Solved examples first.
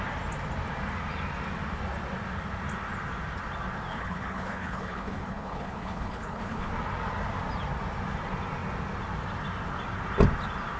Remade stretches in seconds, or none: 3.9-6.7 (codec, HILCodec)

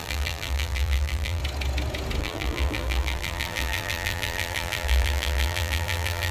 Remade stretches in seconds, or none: 0.0-1.4 (vocoder, BigVGAN v2); 2.2-6.3

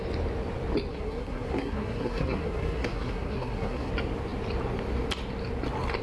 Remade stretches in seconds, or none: 0.9-3.9 (codec, SNAC)

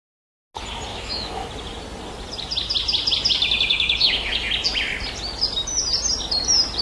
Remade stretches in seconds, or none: 0.9-1.5 (autoencoder, DAC-VAE); 3.7-4.4

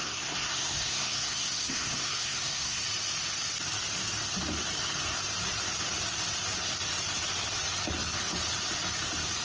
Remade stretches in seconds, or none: 0.0-2.8 (codec, SNAC)

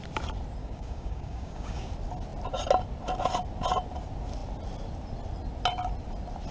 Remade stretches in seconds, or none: 0.6-1.9 (codec, DAC)